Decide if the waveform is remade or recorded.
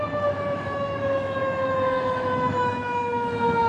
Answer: remade